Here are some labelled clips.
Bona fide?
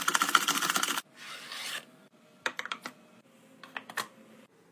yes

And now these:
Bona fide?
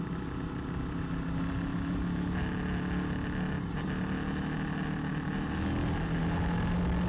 yes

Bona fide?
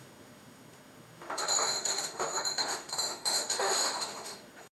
no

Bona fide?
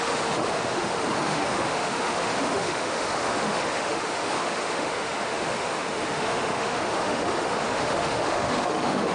no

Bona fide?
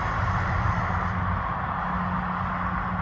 yes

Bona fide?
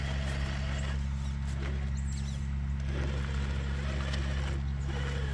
yes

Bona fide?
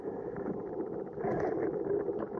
yes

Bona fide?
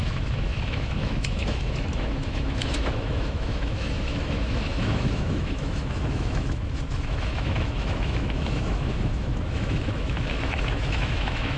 no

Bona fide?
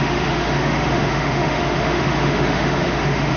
no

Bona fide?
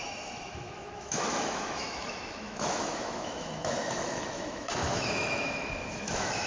no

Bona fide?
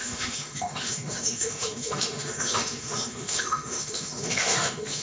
no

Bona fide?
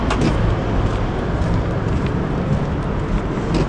yes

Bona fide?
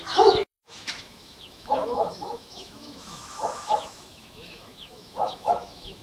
no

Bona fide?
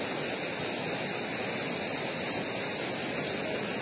yes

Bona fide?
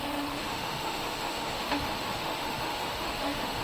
no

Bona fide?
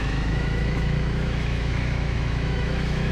no